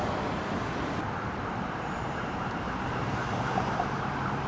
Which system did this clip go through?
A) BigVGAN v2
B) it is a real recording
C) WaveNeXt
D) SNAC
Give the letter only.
A